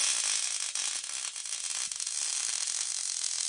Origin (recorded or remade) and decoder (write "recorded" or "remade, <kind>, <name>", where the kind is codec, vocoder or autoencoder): recorded